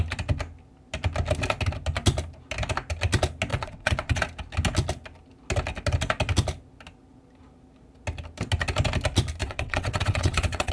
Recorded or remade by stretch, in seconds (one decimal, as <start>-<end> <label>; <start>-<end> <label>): 0.0-3.5 recorded; 3.5-4.2 remade; 4.2-9.4 recorded; 9.4-10.7 remade